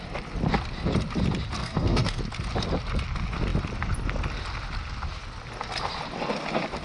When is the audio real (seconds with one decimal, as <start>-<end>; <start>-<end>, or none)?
0.0-1.6; 2.2-6.8